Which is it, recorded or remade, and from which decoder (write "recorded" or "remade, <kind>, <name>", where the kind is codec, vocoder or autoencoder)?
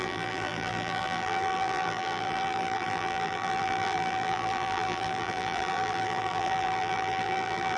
remade, vocoder, BigVGAN v2